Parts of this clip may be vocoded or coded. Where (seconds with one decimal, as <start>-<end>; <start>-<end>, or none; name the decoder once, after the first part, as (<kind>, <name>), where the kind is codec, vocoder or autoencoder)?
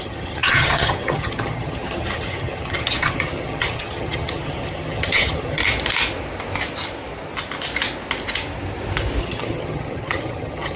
0.0-5.6 (vocoder, HiFi-GAN); 9.2-10.8